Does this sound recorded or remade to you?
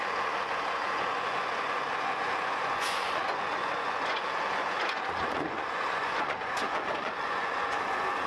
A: remade